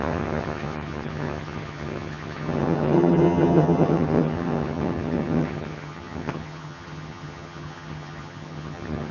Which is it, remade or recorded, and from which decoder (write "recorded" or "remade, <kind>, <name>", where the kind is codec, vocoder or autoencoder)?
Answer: remade, vocoder, HiFi-GAN